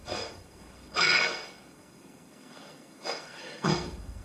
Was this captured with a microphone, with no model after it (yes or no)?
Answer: no